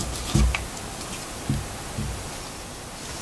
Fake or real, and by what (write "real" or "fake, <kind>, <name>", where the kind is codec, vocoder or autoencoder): real